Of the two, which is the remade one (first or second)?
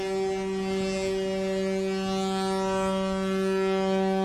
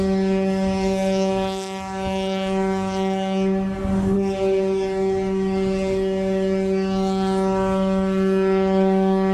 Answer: second